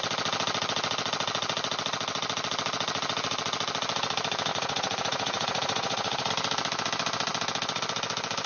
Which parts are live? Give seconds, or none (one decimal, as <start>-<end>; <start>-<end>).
0.0-4.5; 6.3-8.5